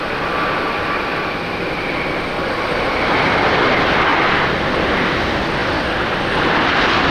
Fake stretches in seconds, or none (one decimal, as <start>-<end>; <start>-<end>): 4.1-4.7